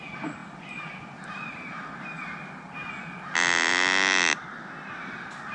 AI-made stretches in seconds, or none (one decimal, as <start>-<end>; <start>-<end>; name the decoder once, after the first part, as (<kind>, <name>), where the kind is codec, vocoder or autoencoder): none